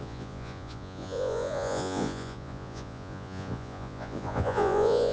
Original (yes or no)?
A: no